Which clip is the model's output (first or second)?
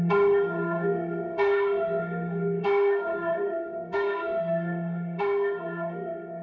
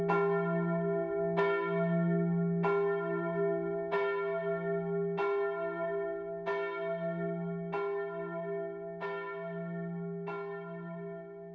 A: first